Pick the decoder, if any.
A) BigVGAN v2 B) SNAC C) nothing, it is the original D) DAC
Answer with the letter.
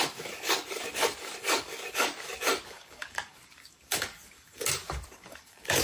D